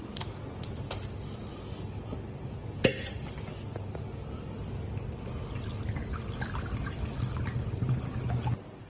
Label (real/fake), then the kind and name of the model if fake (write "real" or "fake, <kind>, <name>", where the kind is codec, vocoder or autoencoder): real